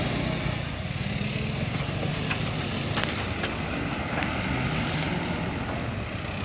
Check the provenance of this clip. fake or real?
real